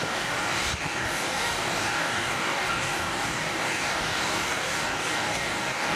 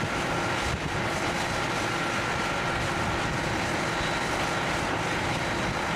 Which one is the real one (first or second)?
second